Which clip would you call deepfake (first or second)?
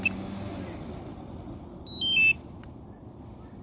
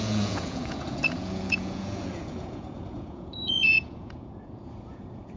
second